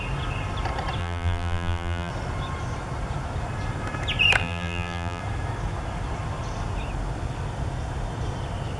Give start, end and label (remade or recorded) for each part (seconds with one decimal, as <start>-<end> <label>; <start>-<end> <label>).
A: 0.0-1.0 recorded; 1.0-2.1 remade; 2.1-4.4 recorded; 4.4-5.2 remade; 5.2-8.8 recorded

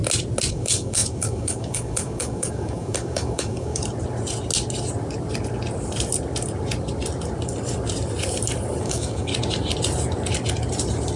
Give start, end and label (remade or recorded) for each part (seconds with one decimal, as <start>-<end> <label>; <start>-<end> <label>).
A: 0.0-0.5 recorded; 0.5-3.8 remade; 3.8-8.8 recorded; 8.8-9.3 remade; 9.3-11.2 recorded